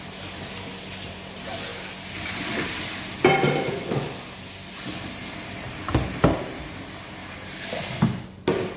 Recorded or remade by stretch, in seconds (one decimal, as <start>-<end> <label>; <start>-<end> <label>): 0.0-8.8 recorded

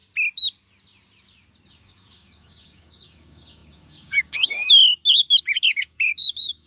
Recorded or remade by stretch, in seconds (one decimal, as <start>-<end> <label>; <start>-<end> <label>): 0.0-1.7 recorded; 1.7-4.8 remade; 4.8-5.4 recorded; 5.4-6.7 remade

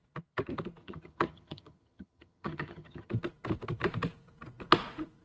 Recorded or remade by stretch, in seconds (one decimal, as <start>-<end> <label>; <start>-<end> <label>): 0.0-0.8 recorded; 0.8-3.1 remade; 3.1-5.2 recorded

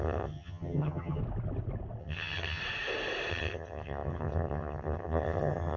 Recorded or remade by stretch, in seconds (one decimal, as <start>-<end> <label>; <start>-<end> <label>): 0.0-1.2 remade; 1.2-2.0 recorded; 2.0-2.6 remade; 2.6-3.3 recorded; 3.3-5.8 remade